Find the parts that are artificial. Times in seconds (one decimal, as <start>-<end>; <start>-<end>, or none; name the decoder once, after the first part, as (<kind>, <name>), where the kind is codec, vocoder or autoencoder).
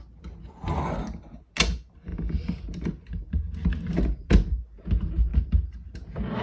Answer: none